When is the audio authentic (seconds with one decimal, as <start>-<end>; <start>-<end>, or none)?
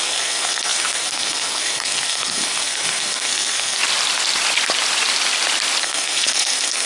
3.8-5.8